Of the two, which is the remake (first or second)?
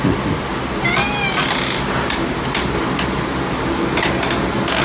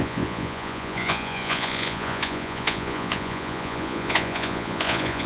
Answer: second